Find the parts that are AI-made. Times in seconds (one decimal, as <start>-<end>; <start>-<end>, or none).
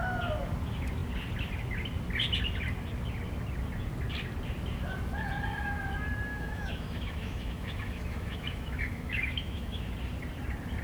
6.3-9.9